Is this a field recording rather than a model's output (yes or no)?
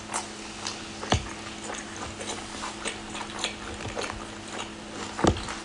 yes